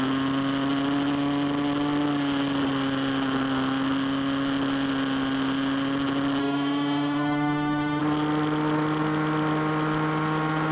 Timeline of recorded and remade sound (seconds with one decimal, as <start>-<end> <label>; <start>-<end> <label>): 0.0-6.4 recorded; 6.4-8.0 remade; 8.0-10.7 recorded